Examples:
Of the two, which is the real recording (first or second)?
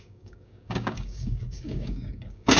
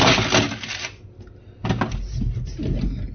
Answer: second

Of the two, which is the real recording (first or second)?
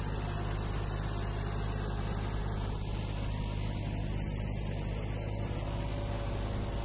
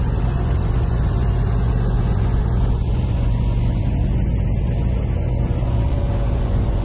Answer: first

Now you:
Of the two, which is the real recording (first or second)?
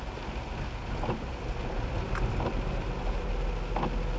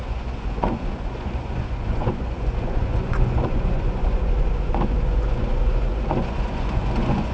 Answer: first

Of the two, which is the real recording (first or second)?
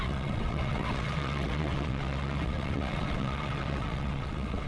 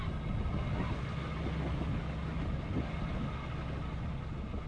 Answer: second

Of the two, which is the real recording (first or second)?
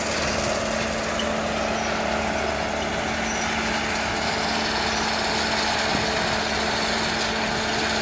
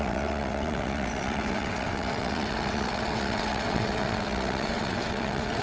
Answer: first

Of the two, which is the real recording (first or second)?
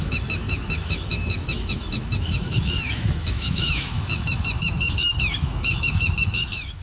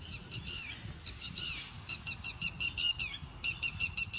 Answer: second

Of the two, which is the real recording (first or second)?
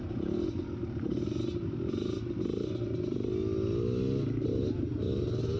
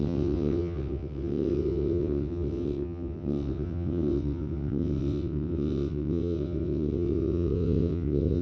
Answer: first